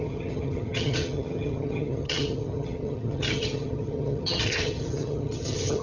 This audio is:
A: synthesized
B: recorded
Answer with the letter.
A